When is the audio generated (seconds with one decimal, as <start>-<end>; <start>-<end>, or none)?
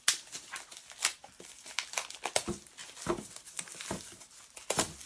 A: none